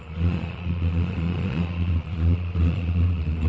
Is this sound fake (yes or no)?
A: yes